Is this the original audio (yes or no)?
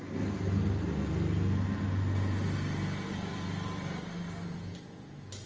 yes